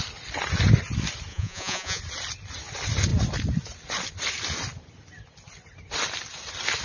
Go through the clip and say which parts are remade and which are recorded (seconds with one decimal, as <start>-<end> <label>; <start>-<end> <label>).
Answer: 0.0-1.3 recorded; 1.3-2.0 remade; 2.0-6.8 recorded